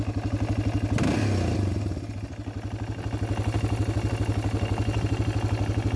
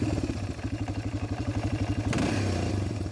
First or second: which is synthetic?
second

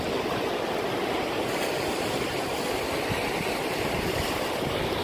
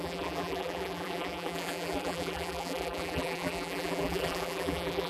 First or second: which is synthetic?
second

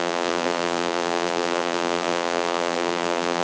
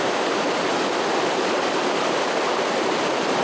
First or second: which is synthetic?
first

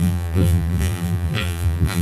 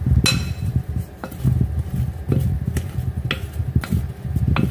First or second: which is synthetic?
first